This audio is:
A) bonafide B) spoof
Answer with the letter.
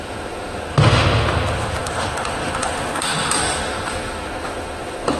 B